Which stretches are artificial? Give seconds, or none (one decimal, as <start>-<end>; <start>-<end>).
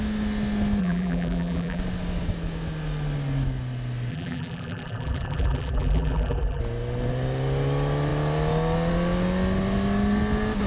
0.8-1.8; 4.1-6.6